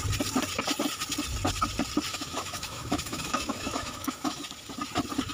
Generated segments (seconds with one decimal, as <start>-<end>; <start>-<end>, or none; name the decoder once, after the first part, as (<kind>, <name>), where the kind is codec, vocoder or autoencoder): 2.1-4.4 (autoencoder, DAC-VAE)